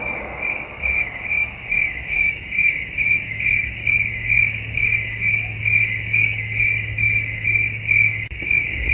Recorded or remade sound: remade